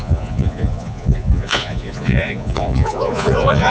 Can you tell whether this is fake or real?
fake